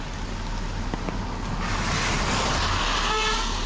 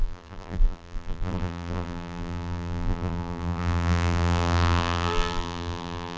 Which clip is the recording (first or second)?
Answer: first